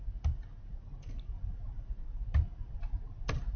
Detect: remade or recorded recorded